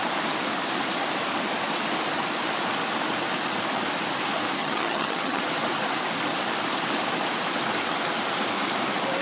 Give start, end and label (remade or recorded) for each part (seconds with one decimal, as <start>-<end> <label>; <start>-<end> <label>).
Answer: 0.0-4.6 recorded; 4.6-5.4 remade; 5.4-9.2 recorded